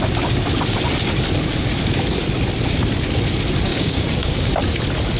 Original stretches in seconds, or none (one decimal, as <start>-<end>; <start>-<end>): 0.0-3.7; 4.5-5.2